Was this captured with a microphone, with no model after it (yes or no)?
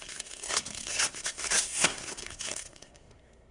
no